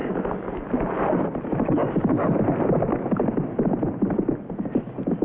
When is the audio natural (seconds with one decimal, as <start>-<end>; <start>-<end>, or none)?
0.0-5.2